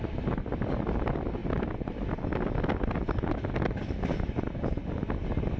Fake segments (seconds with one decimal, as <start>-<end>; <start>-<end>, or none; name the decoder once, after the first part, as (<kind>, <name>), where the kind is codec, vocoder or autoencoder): none